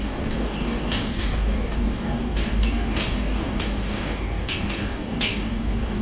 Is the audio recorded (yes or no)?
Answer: no